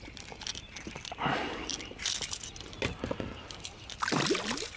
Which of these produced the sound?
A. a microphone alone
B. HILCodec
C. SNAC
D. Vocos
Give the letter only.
A